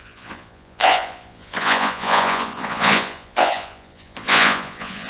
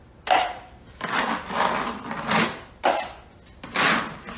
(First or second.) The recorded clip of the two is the second